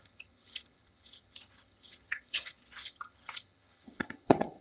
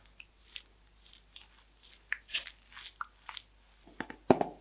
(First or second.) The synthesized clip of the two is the first